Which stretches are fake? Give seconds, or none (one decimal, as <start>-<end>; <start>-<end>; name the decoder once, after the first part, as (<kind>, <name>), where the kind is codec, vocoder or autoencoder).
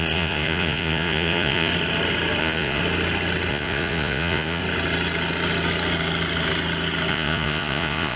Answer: 0.0-1.7 (vocoder, Vocos); 2.4-2.8; 3.5-4.6; 7.1-8.2